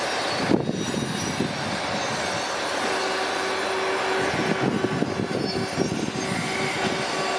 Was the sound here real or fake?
real